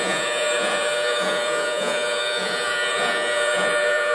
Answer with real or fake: fake